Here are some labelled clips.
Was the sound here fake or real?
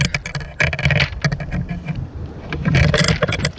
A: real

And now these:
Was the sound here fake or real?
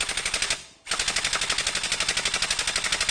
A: real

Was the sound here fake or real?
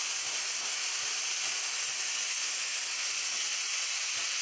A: real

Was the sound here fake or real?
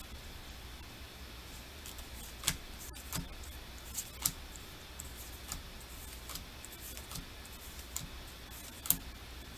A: real